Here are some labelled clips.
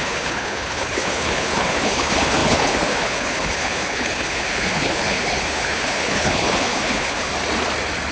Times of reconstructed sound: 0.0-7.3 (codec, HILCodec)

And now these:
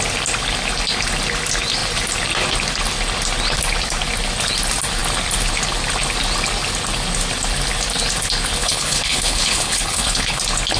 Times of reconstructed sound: 8.6-10.4 (codec, HILCodec)